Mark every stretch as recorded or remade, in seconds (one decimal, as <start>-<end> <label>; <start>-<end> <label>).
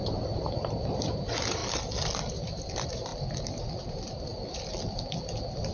0.0-1.6 remade; 1.6-2.3 recorded; 2.3-3.1 remade; 3.1-3.8 recorded; 3.8-4.3 remade; 4.3-5.7 recorded